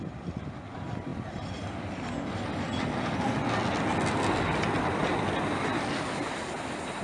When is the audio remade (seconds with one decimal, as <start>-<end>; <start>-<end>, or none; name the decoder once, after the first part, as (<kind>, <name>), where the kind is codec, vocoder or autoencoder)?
none